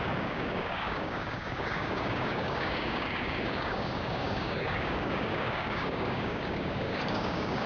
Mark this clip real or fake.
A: fake